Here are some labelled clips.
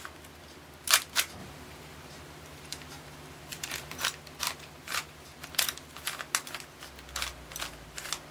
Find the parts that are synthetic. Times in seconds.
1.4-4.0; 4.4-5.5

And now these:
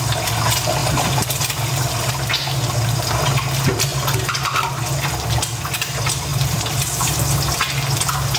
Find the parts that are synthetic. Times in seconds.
0.8-2.1; 6.3-7.1

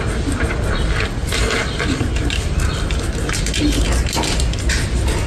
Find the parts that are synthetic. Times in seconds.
1.2-3.4

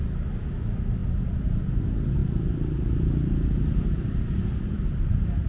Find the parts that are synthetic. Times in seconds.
1.0-1.8; 2.2-5.1

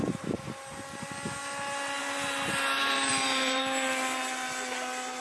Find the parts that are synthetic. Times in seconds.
0.0-0.5; 2.8-3.6